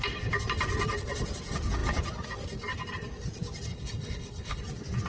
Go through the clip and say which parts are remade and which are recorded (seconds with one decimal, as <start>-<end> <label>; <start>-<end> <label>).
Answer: 0.0-3.7 recorded; 3.7-4.6 remade; 4.6-5.1 recorded